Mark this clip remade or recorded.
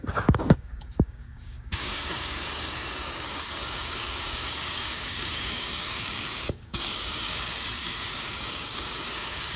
remade